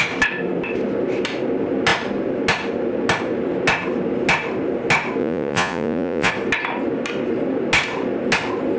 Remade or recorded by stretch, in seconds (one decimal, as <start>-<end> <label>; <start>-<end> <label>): 0.0-5.2 recorded; 5.2-6.3 remade; 6.3-8.8 recorded